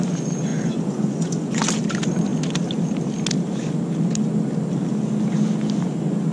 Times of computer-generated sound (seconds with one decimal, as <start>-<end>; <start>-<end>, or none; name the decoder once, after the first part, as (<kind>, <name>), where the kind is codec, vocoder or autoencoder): 0.5-1.6 (vocoder, Vocos)